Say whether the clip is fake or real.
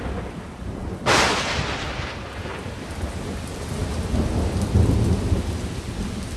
real